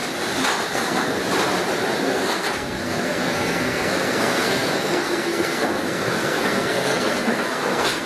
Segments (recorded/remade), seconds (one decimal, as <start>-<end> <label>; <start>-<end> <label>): 0.0-0.7 recorded; 0.7-1.2 remade; 1.2-2.0 recorded; 2.0-8.1 remade